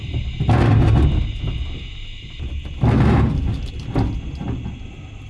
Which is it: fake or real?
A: real